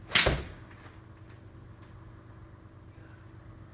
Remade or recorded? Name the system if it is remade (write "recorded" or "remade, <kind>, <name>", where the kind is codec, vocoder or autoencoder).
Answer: recorded